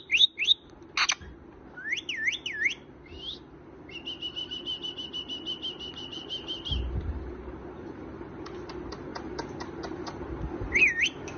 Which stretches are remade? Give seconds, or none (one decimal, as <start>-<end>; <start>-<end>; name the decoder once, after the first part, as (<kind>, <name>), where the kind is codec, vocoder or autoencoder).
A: none